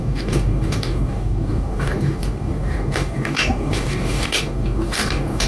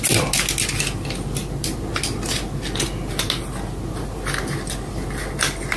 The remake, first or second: first